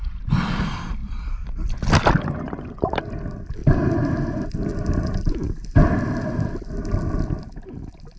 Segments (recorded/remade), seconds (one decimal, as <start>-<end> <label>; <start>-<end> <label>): 0.0-1.0 recorded; 1.0-2.2 remade; 2.2-3.6 recorded; 3.6-6.3 remade; 6.3-8.2 recorded